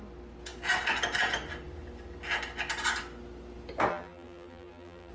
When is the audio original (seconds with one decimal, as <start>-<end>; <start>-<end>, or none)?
0.0-3.9